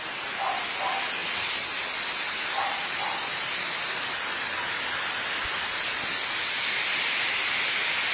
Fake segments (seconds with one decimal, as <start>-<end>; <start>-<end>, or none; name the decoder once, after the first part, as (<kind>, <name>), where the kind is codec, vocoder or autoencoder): none